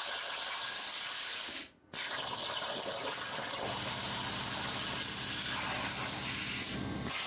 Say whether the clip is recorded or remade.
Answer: recorded